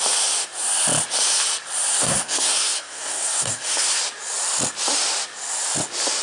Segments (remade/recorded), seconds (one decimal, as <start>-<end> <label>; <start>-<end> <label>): 0.0-1.9 recorded; 1.9-4.0 remade; 4.0-6.2 recorded